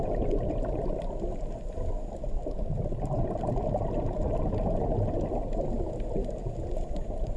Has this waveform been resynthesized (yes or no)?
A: no